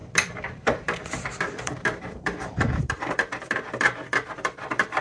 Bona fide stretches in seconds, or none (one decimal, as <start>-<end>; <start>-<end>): none